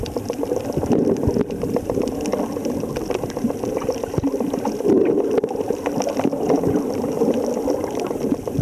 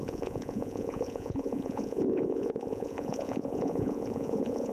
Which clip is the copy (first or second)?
second